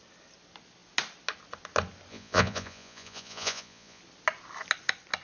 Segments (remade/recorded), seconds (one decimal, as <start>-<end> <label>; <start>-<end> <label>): 0.0-2.1 recorded; 2.1-4.0 remade; 4.0-5.2 recorded